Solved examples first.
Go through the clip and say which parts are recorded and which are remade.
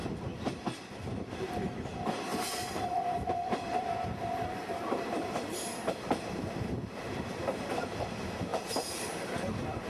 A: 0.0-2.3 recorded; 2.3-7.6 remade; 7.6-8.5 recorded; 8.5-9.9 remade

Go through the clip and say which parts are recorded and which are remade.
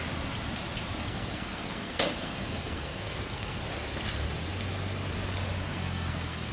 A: 0.0-1.0 recorded; 1.0-3.6 remade; 3.6-5.7 recorded; 5.7-6.5 remade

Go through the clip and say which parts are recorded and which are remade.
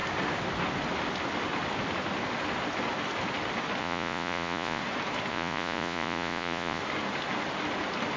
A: 0.0-3.8 recorded; 3.8-4.8 remade; 4.8-5.3 recorded; 5.3-6.8 remade; 6.8-8.2 recorded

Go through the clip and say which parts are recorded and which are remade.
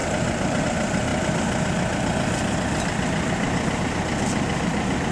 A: 0.0-0.6 remade; 0.6-1.1 recorded; 1.1-3.8 remade; 3.8-5.1 recorded